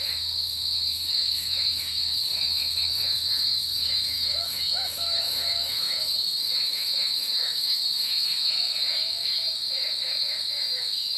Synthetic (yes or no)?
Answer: yes